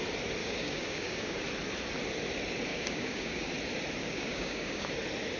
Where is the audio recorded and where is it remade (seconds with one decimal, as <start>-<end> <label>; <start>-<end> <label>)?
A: 0.0-0.4 recorded; 0.4-1.4 remade; 1.4-2.7 recorded; 2.7-3.5 remade; 3.5-4.0 recorded; 4.0-4.9 remade; 4.9-5.4 recorded